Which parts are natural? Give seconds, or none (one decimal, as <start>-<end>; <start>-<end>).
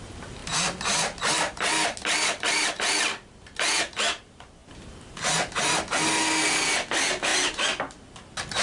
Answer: 0.0-8.6